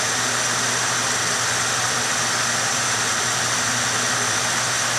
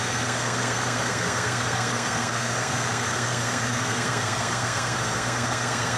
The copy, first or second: second